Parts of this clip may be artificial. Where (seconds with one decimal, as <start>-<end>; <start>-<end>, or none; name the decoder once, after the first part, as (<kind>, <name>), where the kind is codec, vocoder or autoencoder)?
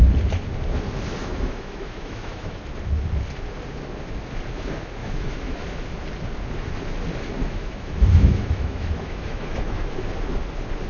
1.2-2.6 (autoencoder, DAC-VAE); 5.0-5.6; 7.4-9.9